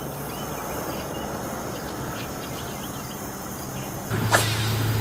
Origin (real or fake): real